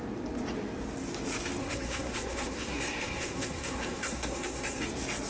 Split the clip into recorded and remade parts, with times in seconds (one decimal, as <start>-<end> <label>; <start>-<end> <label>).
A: 0.0-1.6 recorded; 1.6-4.8 remade; 4.8-5.3 recorded